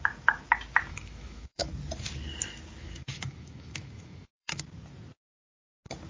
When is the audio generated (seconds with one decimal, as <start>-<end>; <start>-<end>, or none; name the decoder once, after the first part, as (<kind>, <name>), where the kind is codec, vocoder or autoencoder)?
0.9-1.7 (autoencoder, DAC-VAE); 2.8-4.6